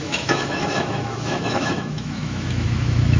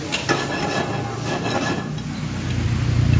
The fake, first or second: first